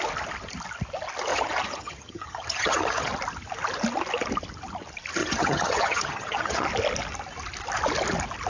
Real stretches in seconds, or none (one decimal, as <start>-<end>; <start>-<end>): 0.0-1.3; 3.1-5.2; 6.7-8.5